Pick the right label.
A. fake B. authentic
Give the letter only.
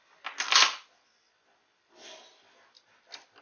B